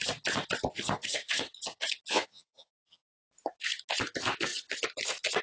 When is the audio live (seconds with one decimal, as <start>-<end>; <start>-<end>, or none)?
0.0-2.1; 3.2-5.4